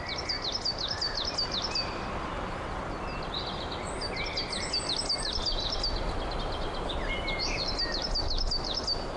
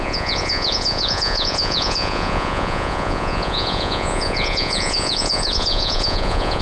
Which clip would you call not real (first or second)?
second